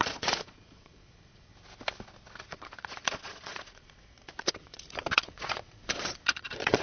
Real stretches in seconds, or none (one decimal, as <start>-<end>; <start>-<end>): 1.5-2.4